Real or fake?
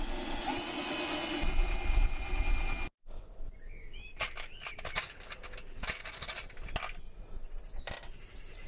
real